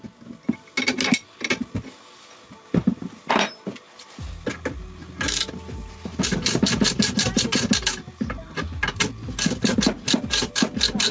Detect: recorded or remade recorded